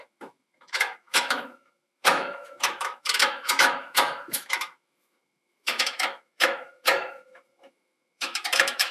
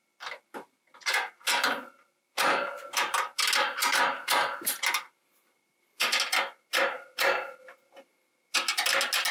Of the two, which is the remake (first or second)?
first